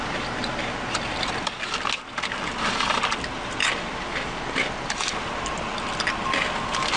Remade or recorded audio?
recorded